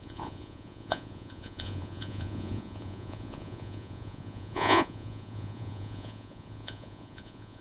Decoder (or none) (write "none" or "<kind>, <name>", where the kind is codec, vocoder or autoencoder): vocoder, Vocos